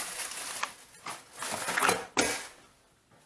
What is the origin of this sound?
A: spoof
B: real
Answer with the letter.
B